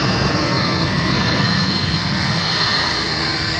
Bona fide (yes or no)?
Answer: no